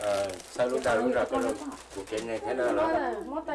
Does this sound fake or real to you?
real